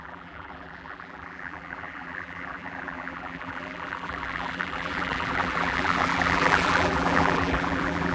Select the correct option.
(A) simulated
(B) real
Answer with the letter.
A